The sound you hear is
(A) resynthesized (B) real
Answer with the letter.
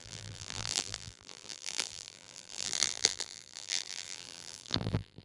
A